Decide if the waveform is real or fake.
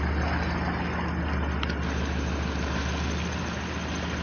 real